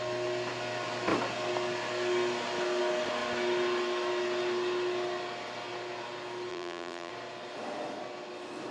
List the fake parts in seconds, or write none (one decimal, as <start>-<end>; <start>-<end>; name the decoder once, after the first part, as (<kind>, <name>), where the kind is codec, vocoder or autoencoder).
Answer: 6.5-7.1 (vocoder, BigVGAN v2)

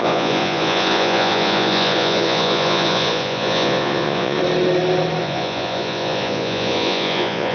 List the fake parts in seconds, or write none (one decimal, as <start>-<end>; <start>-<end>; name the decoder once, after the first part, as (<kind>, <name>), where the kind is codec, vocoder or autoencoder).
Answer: 0.0-4.4 (vocoder, Vocos); 5.2-7.5

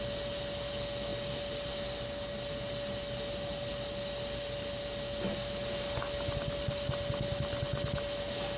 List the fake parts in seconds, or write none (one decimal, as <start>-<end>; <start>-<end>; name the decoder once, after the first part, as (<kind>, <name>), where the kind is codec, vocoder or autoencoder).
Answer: none

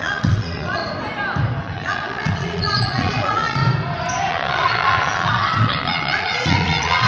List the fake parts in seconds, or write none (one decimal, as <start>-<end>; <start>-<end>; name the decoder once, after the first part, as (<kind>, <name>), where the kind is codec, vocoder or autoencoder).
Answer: 0.0-0.8 (vocoder, Vocos); 1.6-3.6; 4.3-7.1

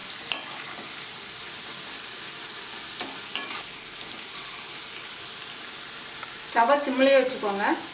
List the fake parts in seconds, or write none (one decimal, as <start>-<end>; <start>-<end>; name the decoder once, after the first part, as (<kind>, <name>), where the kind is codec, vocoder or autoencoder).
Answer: none